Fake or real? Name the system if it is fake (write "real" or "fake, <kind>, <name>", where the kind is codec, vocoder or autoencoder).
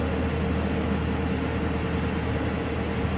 real